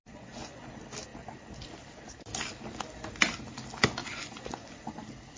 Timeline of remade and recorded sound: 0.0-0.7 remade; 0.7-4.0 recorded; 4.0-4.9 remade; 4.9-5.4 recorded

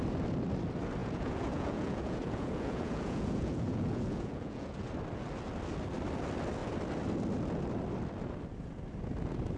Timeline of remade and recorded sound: 0.0-1.0 recorded; 1.0-4.9 remade; 4.9-9.6 recorded

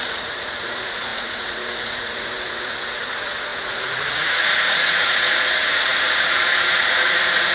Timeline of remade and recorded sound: 0.0-7.5 remade

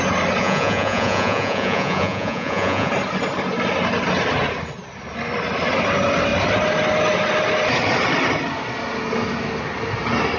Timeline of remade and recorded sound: 0.0-0.4 recorded; 0.4-2.9 remade; 2.9-10.4 recorded

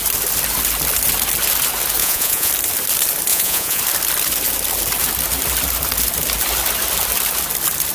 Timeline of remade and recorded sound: 0.0-2.0 recorded; 2.0-2.5 remade; 2.5-3.3 recorded; 3.3-3.8 remade; 3.8-7.9 recorded